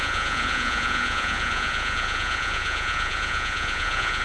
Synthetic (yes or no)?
yes